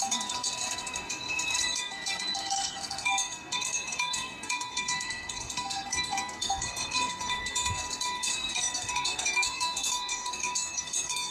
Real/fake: fake